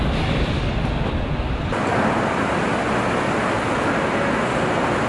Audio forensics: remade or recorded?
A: recorded